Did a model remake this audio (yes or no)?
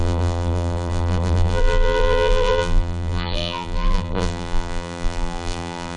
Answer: yes